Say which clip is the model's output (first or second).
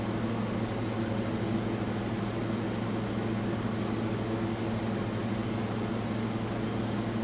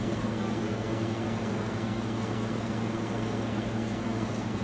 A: second